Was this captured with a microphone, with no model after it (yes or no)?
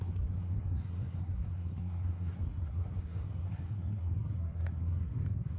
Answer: no